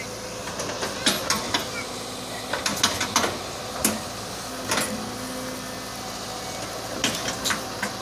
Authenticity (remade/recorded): recorded